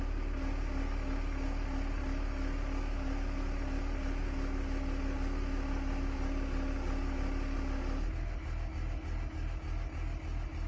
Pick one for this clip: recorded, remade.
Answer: recorded